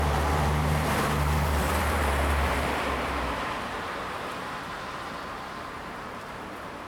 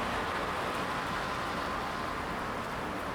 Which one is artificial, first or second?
first